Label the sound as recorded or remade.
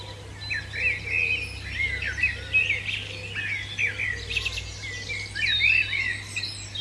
recorded